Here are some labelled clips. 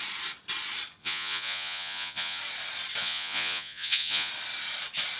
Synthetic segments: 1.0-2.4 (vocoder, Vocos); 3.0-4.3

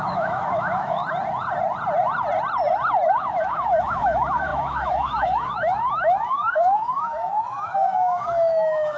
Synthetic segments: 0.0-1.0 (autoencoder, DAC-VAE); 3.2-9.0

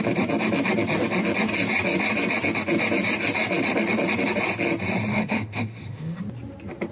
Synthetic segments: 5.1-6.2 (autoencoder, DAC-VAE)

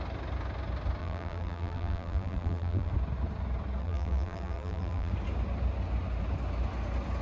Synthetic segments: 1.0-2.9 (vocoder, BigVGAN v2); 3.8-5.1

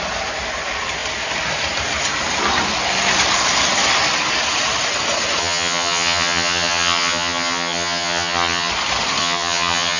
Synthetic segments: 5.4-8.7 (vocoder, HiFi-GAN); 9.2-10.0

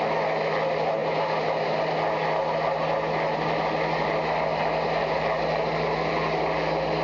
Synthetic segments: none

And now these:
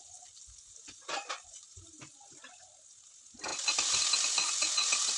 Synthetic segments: none

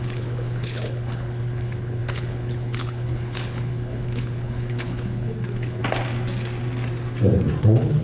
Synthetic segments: 0.0-5.8 (codec, HILCodec); 7.6-8.0